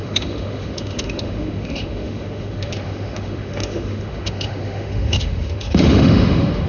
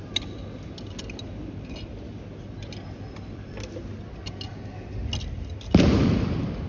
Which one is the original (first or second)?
second